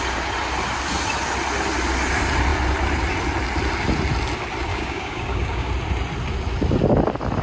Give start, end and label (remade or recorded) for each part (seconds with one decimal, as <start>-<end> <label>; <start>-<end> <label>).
0.0-4.7 recorded; 4.7-5.7 remade; 5.7-7.4 recorded